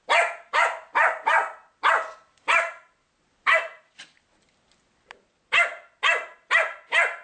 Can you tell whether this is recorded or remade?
recorded